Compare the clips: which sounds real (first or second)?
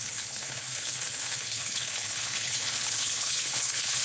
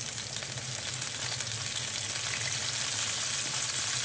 second